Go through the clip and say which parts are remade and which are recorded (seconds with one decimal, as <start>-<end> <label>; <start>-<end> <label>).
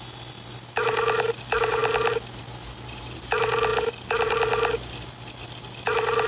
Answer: 0.0-6.3 recorded